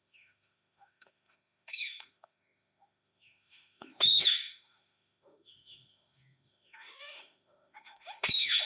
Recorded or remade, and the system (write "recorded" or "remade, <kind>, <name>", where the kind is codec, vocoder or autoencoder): remade, autoencoder, DAC-VAE